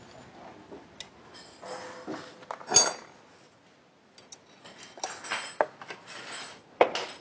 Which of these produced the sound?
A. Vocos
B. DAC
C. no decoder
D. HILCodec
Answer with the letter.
C